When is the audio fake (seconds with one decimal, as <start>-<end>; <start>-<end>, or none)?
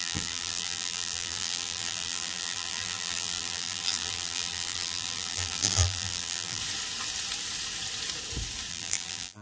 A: 0.0-6.6; 8.7-9.4